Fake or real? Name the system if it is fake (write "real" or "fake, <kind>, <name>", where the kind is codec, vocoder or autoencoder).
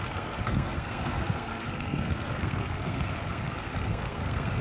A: fake, codec, SNAC